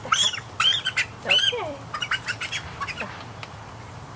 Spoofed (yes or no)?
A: yes